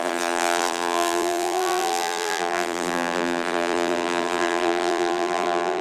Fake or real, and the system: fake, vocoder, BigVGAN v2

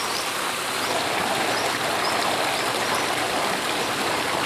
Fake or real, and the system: real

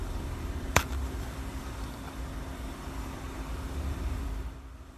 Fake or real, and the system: fake, vocoder, BigVGAN v2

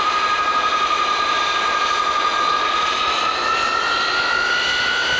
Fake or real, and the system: fake, vocoder, BigVGAN v2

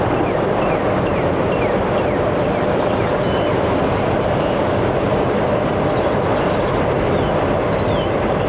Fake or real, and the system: real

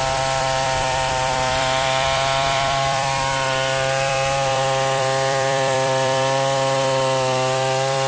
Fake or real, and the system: fake, vocoder, BigVGAN v2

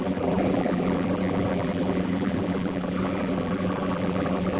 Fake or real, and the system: fake, vocoder, BigVGAN v2